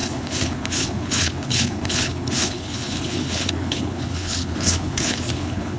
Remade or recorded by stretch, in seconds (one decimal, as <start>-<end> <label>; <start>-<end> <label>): 0.0-5.8 remade